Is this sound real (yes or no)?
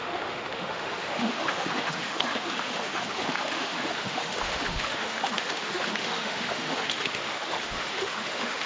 no